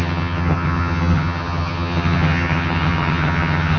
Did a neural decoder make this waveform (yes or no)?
yes